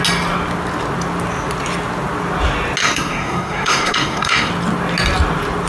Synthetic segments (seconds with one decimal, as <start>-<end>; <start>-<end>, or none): 2.8-4.5